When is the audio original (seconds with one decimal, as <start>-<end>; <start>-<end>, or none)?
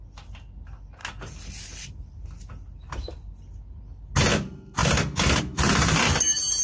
0.0-6.6